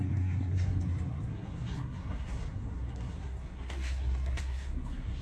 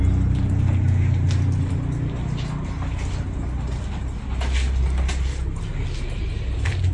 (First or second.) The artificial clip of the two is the first